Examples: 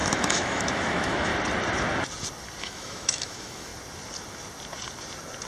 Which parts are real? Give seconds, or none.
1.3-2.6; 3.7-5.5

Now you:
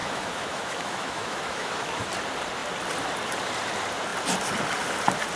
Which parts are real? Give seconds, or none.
2.0-5.4